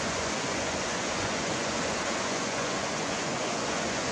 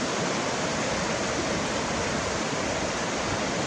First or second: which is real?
second